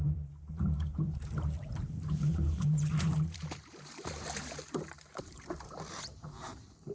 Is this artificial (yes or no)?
yes